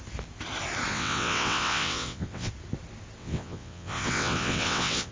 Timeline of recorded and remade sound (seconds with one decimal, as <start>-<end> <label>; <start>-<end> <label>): 0.0-0.9 recorded; 0.9-2.5 remade; 2.5-3.2 recorded; 3.2-5.1 remade